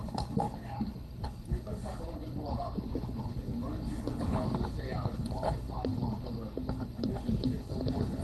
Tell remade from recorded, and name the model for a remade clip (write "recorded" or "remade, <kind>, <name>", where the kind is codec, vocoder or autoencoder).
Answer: remade, codec, HILCodec